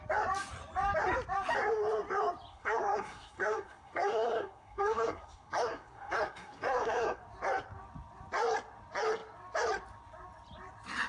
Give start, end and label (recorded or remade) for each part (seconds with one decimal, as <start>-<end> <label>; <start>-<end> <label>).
0.0-2.5 recorded; 2.5-7.2 remade; 7.2-11.1 recorded